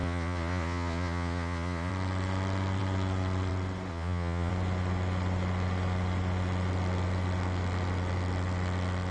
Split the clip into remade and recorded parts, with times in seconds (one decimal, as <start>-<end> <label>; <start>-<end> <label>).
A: 0.0-1.9 remade; 1.9-3.9 recorded; 3.9-4.5 remade; 4.5-9.1 recorded